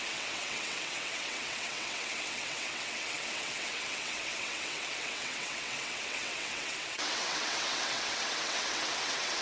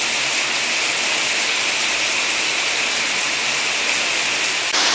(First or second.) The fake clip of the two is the first